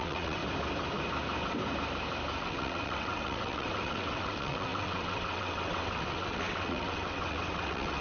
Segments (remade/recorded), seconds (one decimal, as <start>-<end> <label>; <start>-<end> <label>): 0.0-0.4 remade; 0.4-2.4 recorded; 2.4-8.0 remade